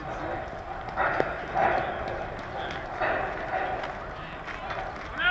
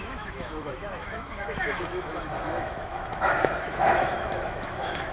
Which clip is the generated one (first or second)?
second